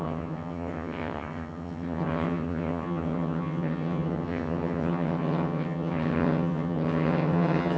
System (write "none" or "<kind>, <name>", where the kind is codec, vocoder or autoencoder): vocoder, HiFi-GAN